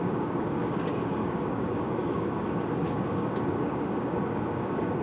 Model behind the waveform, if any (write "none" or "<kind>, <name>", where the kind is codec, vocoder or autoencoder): codec, DAC